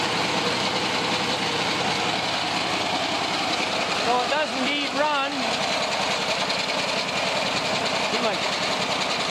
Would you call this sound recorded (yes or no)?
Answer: yes